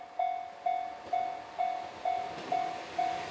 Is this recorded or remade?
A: recorded